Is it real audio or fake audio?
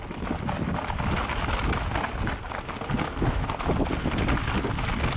real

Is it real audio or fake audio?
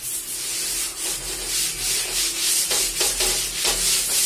real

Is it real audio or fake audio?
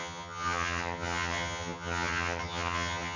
fake